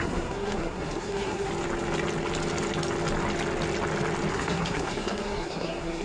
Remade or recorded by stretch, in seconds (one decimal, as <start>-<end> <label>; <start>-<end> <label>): 0.0-1.5 remade; 1.5-4.3 recorded; 4.3-6.0 remade